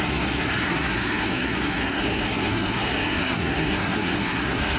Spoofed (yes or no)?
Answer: yes